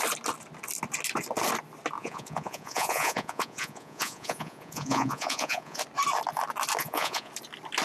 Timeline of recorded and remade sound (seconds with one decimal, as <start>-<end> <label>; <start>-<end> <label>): 0.0-2.0 recorded; 2.0-5.8 remade; 5.8-6.8 recorded; 6.8-7.3 remade; 7.3-7.8 recorded

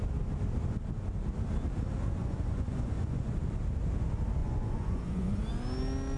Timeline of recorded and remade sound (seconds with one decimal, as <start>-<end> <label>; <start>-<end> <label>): 0.0-2.2 recorded; 2.2-3.3 remade; 3.3-4.4 recorded; 4.4-5.4 remade; 5.4-6.2 recorded